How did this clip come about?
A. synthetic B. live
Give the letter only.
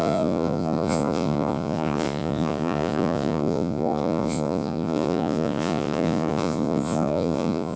A